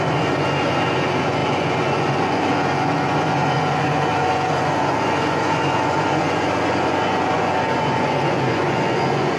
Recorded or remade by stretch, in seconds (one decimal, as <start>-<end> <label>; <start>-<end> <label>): 0.0-9.4 remade